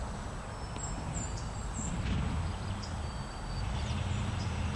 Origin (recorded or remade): recorded